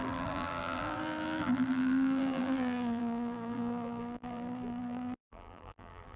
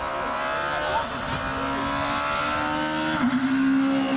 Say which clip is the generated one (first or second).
first